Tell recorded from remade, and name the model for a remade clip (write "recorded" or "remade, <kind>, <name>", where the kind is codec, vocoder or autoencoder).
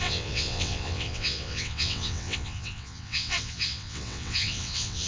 remade, vocoder, WaveNeXt